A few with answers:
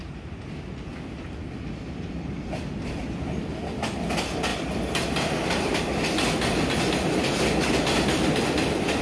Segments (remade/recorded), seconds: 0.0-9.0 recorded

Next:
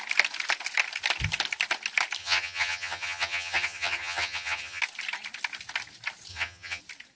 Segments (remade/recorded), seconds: 0.0-2.2 recorded; 2.2-4.8 remade; 4.8-6.3 recorded; 6.3-6.8 remade; 6.8-7.2 recorded

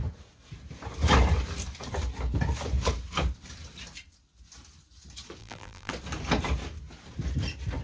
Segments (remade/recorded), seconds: 0.0-5.4 recorded; 5.4-5.9 remade; 5.9-7.8 recorded

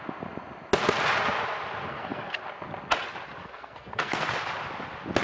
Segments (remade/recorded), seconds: 0.0-1.9 recorded; 1.9-2.4 remade; 2.4-3.4 recorded; 3.4-4.2 remade; 4.2-5.2 recorded

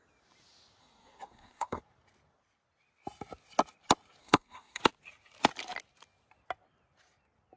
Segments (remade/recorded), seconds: 0.0-0.8 recorded; 0.8-1.8 remade; 1.8-4.2 recorded; 4.2-4.8 remade; 4.8-7.6 recorded

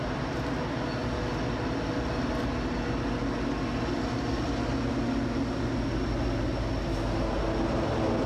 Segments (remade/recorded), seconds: 0.0-8.3 recorded

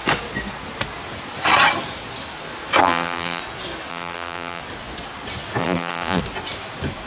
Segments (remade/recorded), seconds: 0.0-2.8 recorded; 2.8-3.4 remade; 3.4-3.9 recorded; 3.9-4.6 remade; 4.6-5.6 recorded; 5.6-6.2 remade; 6.2-7.1 recorded